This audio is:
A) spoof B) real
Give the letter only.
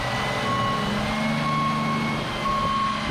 B